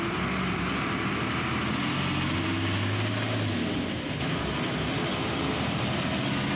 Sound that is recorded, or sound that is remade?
recorded